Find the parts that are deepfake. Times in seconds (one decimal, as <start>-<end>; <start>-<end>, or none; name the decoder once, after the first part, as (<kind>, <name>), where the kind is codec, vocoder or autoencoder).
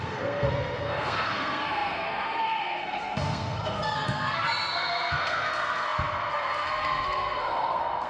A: 0.0-8.1 (codec, SNAC)